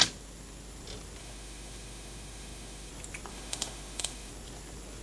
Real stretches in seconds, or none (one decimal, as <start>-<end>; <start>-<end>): 0.0-1.2; 2.9-3.3; 4.3-5.0